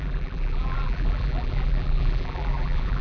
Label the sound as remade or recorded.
remade